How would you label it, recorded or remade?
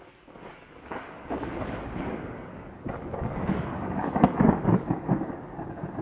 remade